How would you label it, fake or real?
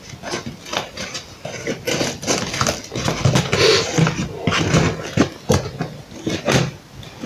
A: real